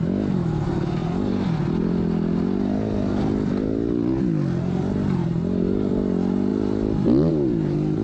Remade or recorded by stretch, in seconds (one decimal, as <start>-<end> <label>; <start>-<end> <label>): 0.0-6.5 recorded; 6.5-7.3 remade; 7.3-8.0 recorded